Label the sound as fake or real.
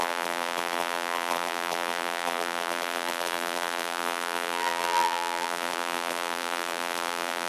fake